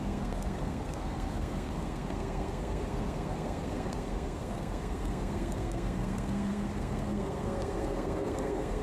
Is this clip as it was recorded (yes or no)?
no